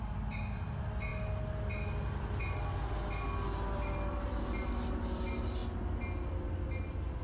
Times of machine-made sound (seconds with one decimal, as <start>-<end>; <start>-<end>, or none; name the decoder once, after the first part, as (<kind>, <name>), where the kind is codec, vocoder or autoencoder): none